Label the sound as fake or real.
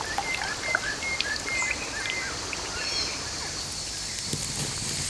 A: real